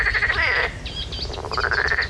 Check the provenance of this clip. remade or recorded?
recorded